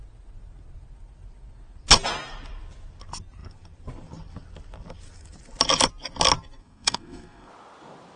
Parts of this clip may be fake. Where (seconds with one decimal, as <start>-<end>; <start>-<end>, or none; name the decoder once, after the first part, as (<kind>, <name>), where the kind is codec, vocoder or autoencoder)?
6.6-7.5 (codec, SNAC)